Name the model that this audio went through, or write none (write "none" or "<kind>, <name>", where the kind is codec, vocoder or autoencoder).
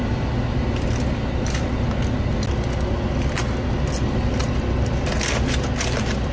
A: none